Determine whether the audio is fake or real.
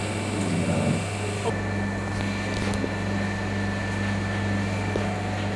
real